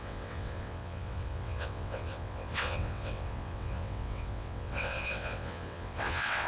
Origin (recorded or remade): remade